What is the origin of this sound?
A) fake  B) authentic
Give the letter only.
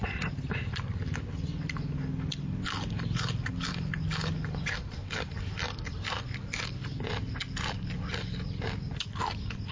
B